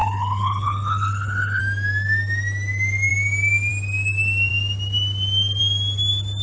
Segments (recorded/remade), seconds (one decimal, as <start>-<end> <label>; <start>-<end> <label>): 0.0-1.6 remade; 1.6-6.4 recorded